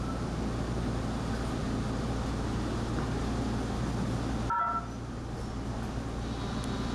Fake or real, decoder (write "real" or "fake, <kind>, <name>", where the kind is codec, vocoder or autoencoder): real